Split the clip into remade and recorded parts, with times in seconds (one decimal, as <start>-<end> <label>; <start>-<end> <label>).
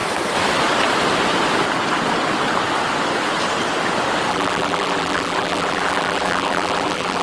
0.0-4.3 recorded; 4.3-7.2 remade